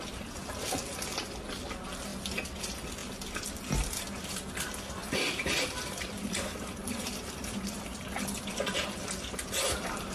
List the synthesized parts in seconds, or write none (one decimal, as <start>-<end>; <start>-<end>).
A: 5.0-7.8